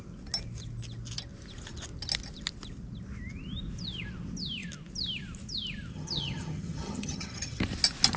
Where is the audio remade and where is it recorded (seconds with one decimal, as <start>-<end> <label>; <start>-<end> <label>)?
0.0-5.9 recorded; 5.9-7.6 remade; 7.6-8.2 recorded

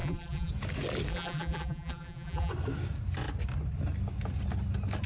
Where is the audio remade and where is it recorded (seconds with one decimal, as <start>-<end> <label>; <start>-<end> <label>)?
0.0-0.5 remade; 0.5-1.1 recorded; 1.1-2.5 remade; 2.5-5.1 recorded

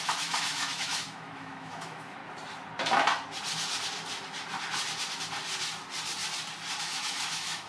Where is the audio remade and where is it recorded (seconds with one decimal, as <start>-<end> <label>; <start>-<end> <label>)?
0.0-2.2 remade; 2.2-6.8 recorded; 6.8-7.7 remade

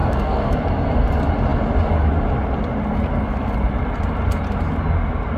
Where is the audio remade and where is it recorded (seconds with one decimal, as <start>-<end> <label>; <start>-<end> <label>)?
0.0-0.5 remade; 0.5-5.4 recorded

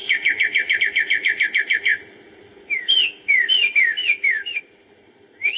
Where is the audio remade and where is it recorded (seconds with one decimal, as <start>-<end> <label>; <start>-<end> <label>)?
0.0-5.6 recorded

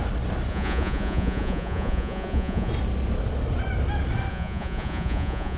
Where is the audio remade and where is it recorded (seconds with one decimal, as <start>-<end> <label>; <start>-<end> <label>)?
0.0-0.5 recorded; 0.5-2.7 remade; 2.7-4.3 recorded; 4.3-5.6 remade

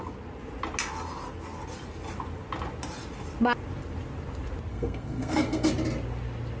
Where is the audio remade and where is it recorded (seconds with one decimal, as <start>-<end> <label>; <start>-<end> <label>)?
0.0-4.7 recorded; 4.7-5.7 remade; 5.7-6.6 recorded